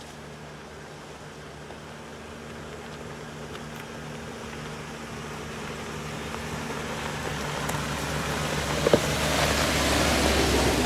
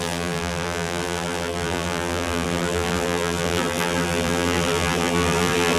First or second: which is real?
first